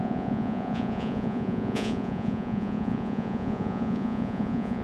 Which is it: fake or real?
fake